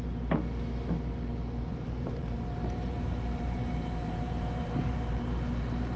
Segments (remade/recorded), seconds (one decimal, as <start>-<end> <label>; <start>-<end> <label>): 0.0-1.7 recorded; 1.7-5.2 remade; 5.2-6.0 recorded